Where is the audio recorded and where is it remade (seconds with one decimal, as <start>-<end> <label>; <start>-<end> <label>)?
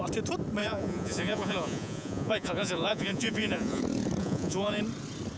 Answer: 0.0-0.6 recorded; 0.6-3.8 remade; 3.8-4.2 recorded; 4.2-4.8 remade; 4.8-5.4 recorded